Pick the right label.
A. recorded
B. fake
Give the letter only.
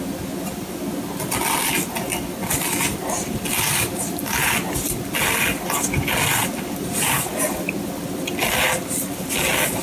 A